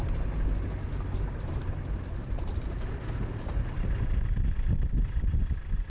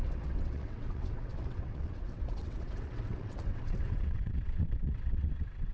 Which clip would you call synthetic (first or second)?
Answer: second